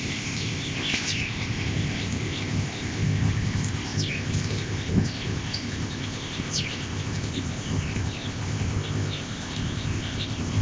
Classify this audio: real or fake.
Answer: fake